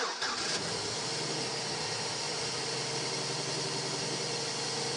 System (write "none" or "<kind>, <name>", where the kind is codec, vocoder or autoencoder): none